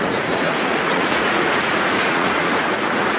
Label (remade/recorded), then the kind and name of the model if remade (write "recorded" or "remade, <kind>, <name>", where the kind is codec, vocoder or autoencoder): remade, vocoder, Vocos